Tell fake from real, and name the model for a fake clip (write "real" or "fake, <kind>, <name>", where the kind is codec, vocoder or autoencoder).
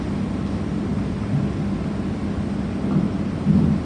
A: real